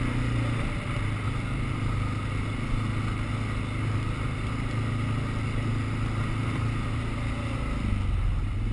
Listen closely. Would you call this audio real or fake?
real